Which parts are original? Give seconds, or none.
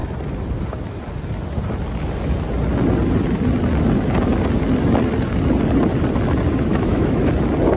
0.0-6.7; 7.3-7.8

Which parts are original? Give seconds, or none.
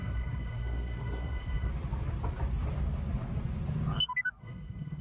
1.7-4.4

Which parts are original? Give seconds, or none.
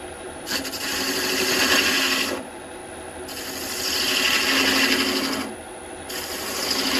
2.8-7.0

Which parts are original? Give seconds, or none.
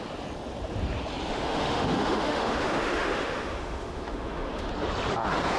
0.0-1.3; 4.7-5.6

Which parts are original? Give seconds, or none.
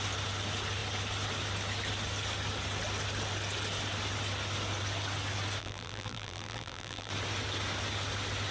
0.0-5.6; 7.1-8.5